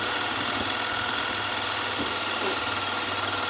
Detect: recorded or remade recorded